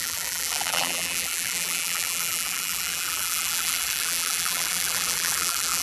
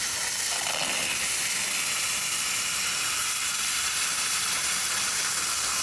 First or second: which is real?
second